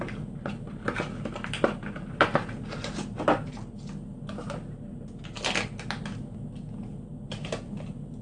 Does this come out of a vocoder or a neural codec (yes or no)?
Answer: no